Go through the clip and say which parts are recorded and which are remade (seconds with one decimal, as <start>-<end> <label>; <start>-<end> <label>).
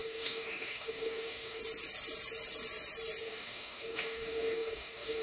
0.0-1.6 remade; 1.6-3.2 recorded; 3.2-5.2 remade